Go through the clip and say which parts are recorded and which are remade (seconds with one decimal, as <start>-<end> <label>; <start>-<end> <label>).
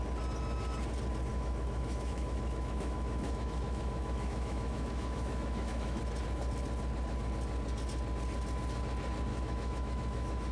0.0-1.3 recorded; 1.3-6.0 remade; 6.0-9.3 recorded; 9.3-10.5 remade